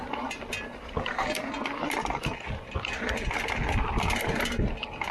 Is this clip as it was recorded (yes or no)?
yes